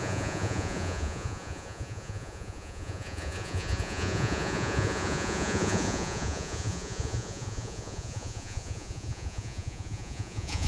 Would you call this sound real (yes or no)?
no